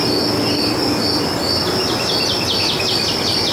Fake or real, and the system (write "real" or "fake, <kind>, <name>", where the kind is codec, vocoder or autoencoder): real